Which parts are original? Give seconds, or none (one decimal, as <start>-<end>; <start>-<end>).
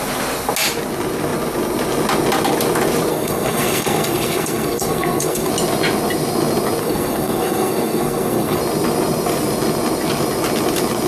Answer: 0.0-3.1; 5.5-6.8; 8.6-11.1